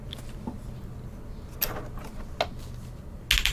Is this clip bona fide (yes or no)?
yes